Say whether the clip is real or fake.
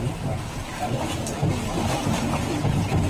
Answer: real